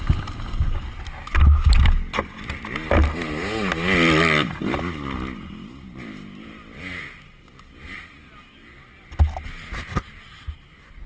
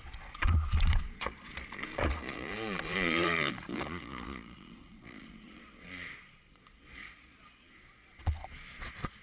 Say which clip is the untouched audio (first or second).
first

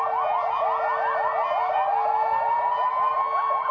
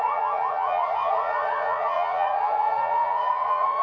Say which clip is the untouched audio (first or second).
first